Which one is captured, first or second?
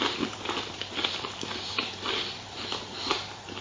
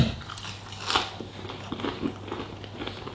second